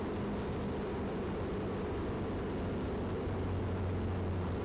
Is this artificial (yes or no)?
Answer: no